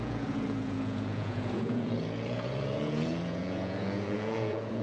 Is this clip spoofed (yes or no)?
yes